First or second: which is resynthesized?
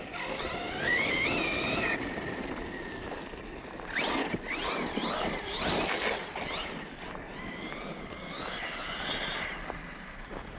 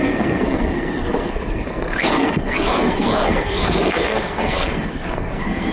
second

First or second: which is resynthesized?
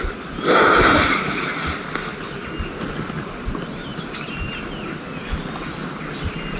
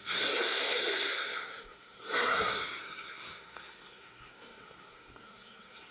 second